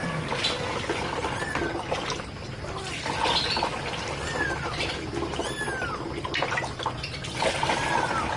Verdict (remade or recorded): recorded